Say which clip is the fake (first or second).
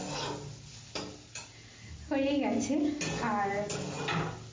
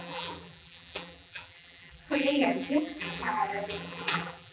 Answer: second